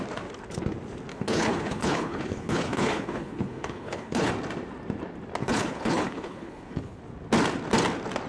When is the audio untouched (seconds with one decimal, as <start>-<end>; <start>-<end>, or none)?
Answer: 0.0-1.1; 4.3-5.4; 7.0-8.3